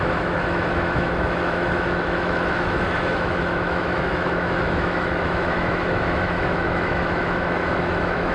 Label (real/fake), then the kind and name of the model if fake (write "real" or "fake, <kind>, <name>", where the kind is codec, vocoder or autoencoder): fake, autoencoder, DAC-VAE